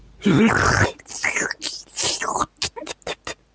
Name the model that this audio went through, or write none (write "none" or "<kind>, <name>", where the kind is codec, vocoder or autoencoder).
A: none